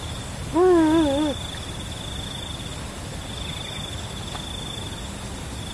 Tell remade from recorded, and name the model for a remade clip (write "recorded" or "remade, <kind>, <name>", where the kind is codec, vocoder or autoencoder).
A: recorded